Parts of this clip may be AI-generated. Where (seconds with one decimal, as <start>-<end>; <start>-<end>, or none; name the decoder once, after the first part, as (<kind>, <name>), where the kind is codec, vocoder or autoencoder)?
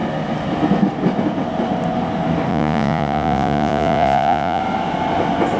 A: 2.5-4.6 (vocoder, Vocos)